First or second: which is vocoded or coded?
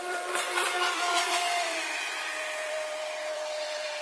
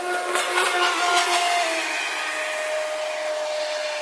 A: first